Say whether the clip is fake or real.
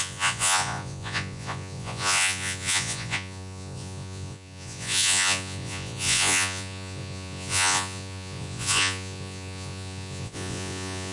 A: fake